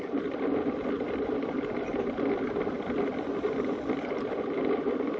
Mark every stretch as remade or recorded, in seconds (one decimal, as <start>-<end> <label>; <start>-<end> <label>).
0.0-5.2 recorded